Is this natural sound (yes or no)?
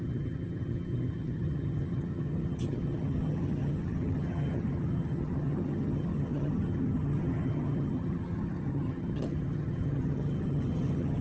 no